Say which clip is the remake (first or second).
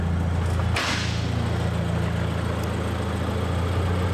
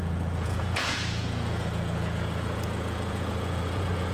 second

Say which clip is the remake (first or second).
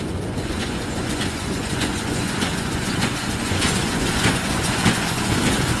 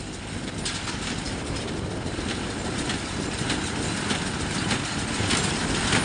first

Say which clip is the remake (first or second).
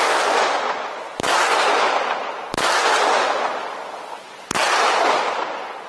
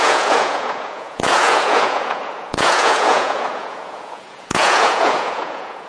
second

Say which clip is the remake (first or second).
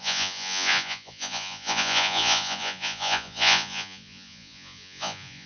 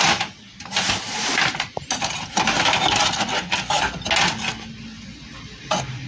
first